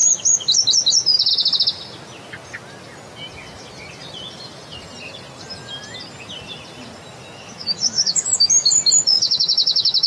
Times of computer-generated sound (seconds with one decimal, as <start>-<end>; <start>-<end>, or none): 7.3-8.5; 9.1-10.1